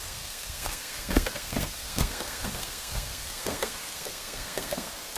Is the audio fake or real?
fake